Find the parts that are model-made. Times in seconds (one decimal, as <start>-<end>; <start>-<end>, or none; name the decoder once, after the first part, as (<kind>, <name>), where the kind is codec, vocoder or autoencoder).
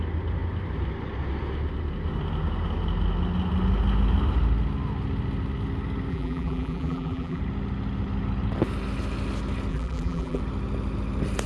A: 6.1-7.4 (vocoder, BigVGAN v2); 9.7-10.4